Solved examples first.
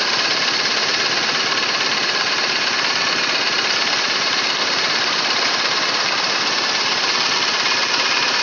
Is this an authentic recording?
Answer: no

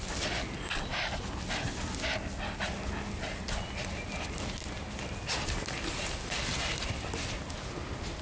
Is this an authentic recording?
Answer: yes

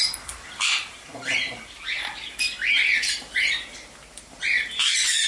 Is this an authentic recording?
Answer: no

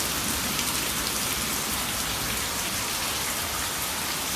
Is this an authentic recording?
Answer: yes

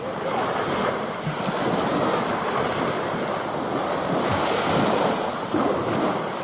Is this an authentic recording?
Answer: yes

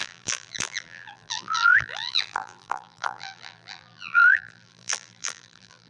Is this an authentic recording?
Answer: no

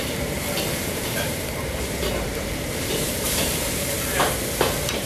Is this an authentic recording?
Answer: no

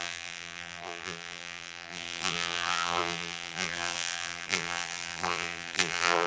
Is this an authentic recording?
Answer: no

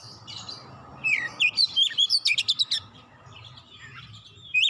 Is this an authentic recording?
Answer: no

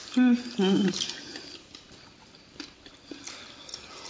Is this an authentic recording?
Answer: yes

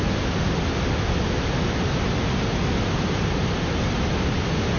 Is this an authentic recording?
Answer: yes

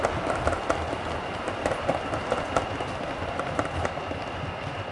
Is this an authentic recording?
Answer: yes